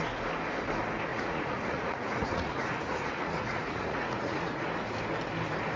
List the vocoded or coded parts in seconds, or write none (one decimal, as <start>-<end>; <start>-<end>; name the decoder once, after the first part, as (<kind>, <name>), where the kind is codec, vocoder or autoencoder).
1.1-4.6 (vocoder, Vocos)